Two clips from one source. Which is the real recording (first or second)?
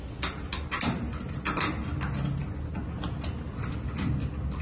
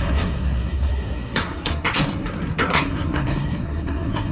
first